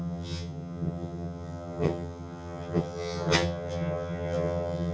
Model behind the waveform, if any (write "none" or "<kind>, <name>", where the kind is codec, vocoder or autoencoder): vocoder, HiFi-GAN